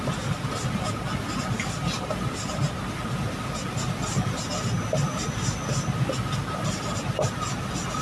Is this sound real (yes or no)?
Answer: yes